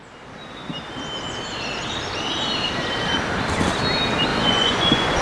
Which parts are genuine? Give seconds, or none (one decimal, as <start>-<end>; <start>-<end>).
0.0-4.3